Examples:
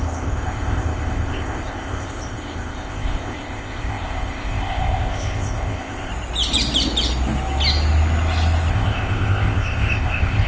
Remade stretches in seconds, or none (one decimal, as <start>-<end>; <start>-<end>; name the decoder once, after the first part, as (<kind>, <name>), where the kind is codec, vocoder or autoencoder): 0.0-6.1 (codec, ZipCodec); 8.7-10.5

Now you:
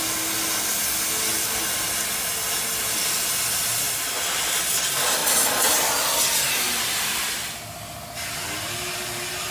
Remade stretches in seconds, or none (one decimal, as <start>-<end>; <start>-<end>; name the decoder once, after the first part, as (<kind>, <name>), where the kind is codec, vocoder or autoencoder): none

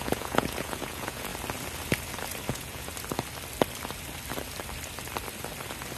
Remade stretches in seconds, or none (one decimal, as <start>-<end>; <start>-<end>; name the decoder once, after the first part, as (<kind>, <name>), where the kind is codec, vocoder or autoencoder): 0.0-1.3 (vocoder, Vocos); 2.5-2.9

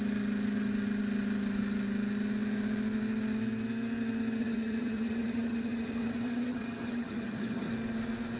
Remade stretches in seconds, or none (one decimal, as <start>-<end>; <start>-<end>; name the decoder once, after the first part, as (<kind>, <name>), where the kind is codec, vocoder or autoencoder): 4.4-7.7 (vocoder, HiFi-GAN)

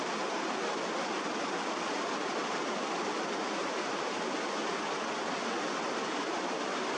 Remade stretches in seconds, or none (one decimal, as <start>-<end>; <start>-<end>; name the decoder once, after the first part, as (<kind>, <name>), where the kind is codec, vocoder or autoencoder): none

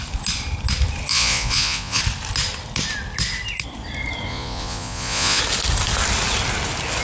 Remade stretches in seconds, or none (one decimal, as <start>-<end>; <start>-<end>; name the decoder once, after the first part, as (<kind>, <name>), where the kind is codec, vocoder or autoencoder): 1.1-2.0 (vocoder, Vocos); 4.3-5.4

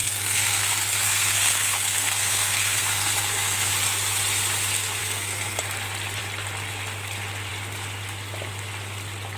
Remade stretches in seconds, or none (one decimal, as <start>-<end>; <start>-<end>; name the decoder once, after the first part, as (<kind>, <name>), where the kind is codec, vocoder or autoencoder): 0.0-3.7 (codec, SNAC); 5.0-5.6